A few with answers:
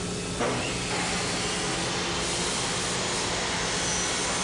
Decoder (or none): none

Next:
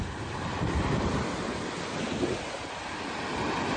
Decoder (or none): none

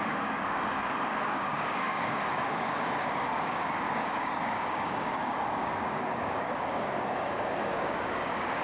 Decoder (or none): codec, DAC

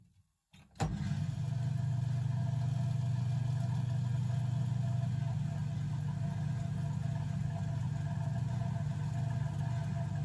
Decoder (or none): none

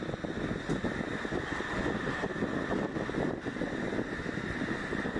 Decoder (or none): none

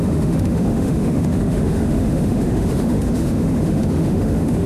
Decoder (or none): autoencoder, DAC-VAE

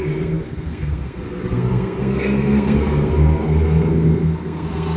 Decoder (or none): codec, SNAC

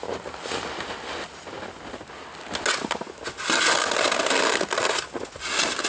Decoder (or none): none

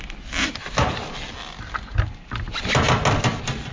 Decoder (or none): none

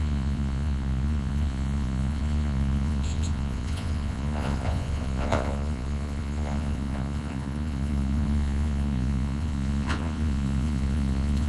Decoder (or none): vocoder, Vocos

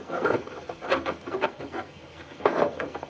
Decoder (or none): codec, SNAC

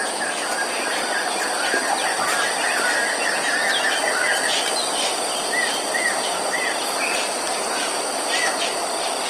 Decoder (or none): none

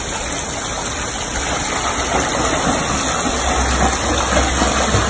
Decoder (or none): none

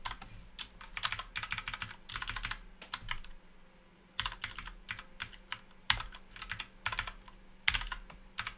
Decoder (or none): none